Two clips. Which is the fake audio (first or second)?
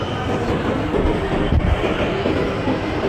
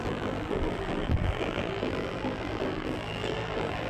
second